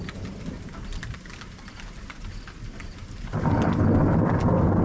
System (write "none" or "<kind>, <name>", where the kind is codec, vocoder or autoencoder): none